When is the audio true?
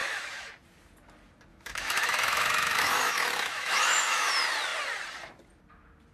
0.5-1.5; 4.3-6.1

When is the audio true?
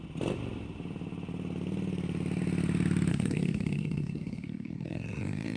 0.0-3.1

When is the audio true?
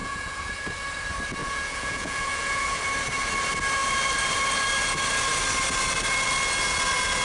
0.5-1.4; 2.8-7.2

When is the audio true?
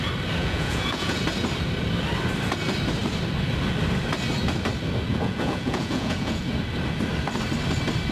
0.0-0.4; 1.2-5.1; 6.5-8.1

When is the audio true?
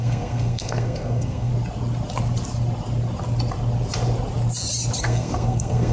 1.5-5.0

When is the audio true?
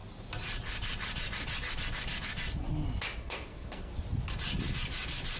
0.0-3.2; 3.9-5.4